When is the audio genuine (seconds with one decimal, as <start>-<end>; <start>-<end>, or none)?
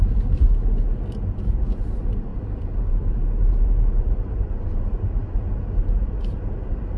0.0-2.3; 4.6-7.0